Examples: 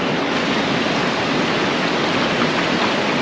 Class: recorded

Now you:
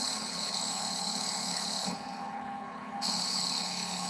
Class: remade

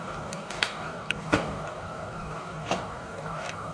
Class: remade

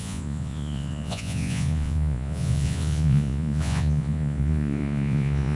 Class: remade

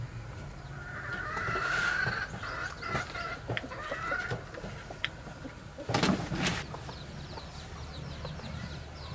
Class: recorded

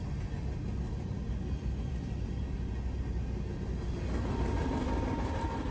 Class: recorded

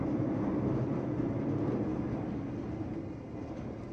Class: recorded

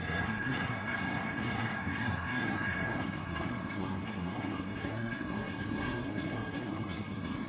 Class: remade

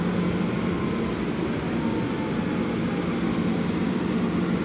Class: recorded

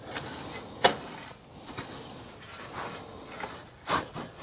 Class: recorded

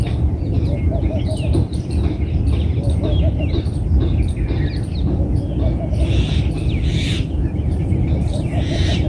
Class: recorded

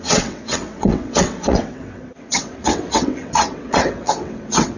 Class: remade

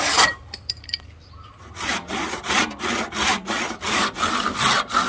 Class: recorded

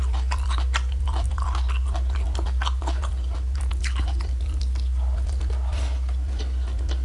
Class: recorded